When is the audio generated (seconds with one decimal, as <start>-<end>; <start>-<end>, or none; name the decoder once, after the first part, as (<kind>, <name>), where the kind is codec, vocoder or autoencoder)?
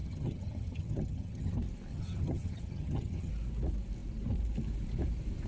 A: 0.0-1.5 (vocoder, HiFi-GAN); 1.9-3.3